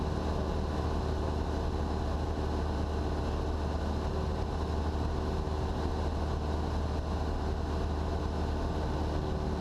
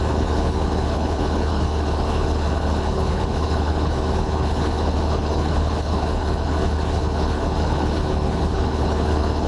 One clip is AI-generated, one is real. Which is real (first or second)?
first